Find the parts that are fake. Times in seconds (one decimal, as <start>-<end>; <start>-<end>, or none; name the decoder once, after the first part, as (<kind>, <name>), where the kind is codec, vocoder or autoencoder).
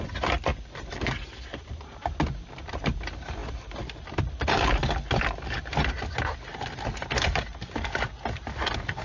none